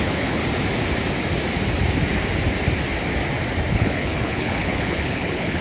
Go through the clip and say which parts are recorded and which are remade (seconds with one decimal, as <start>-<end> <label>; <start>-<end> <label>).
0.0-0.4 remade; 0.4-3.7 recorded; 3.7-5.6 remade